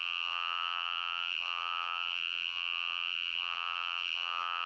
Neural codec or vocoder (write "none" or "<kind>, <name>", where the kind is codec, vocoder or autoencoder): vocoder, BigVGAN v2